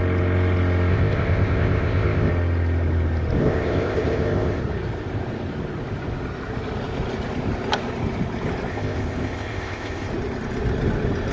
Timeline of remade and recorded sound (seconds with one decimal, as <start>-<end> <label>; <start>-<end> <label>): 0.0-0.9 recorded; 0.9-2.3 remade; 2.3-3.4 recorded; 3.4-4.6 remade; 4.6-8.7 recorded; 8.7-10.1 remade; 10.1-11.3 recorded